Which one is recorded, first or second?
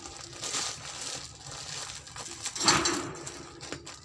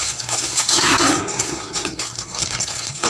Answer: first